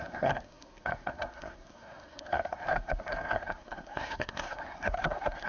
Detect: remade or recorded remade